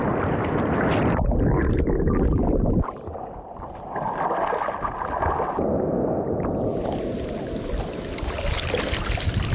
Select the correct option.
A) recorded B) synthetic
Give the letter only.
A